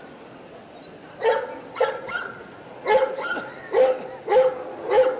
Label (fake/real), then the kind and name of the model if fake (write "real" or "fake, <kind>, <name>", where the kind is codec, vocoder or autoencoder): real